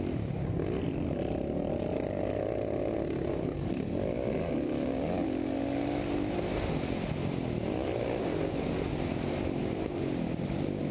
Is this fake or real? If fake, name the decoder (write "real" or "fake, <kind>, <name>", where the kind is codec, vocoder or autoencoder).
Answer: real